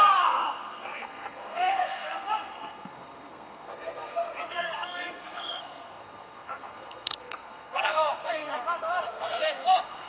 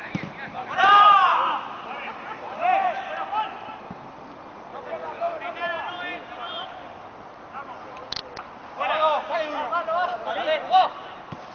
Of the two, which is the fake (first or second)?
first